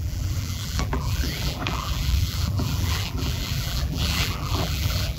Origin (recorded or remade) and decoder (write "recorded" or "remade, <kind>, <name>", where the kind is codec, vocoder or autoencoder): remade, vocoder, BigVGAN v2